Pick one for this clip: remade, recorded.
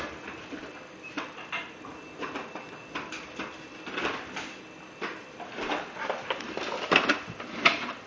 recorded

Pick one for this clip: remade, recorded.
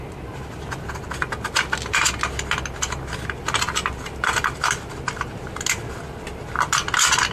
recorded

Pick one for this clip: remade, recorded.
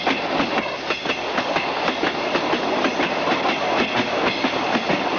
recorded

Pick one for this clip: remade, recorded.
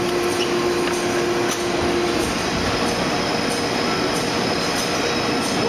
recorded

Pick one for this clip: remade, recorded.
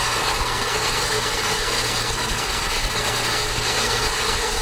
remade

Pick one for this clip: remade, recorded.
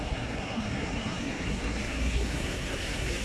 remade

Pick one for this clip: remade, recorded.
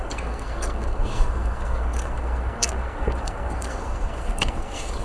remade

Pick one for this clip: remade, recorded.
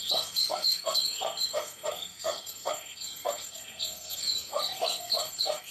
remade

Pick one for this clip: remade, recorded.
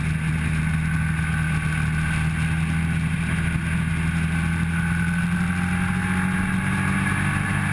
recorded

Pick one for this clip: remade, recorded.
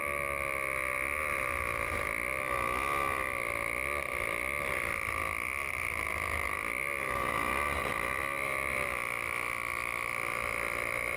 recorded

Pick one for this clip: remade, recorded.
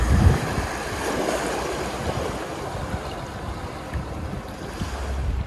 recorded